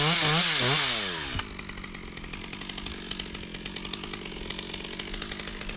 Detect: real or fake real